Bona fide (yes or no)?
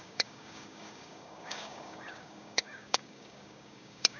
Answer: no